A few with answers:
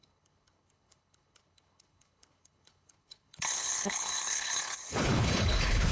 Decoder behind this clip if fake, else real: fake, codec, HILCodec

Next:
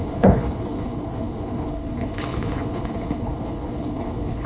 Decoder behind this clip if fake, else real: fake, codec, HILCodec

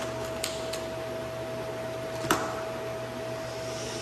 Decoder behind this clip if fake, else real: real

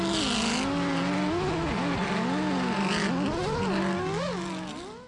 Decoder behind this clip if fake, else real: real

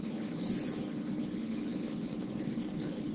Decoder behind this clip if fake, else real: fake, codec, HILCodec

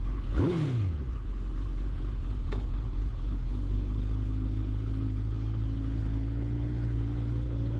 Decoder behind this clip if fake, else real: fake, codec, HILCodec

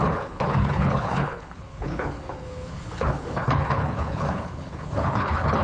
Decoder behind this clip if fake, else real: fake, codec, HILCodec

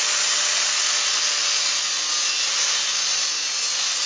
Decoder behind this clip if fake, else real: real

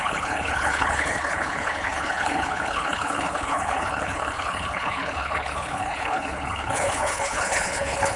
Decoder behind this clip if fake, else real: fake, codec, HILCodec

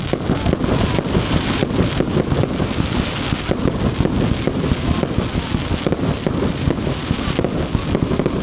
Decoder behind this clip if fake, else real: real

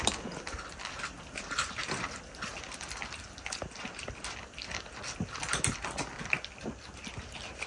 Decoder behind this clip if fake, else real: real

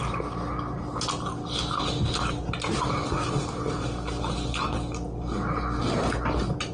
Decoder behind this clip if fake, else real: real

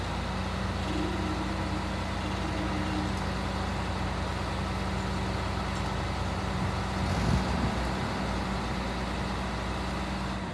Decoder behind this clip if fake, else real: real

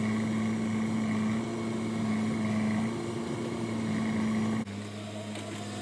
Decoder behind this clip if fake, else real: real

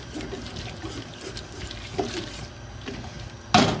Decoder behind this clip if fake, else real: real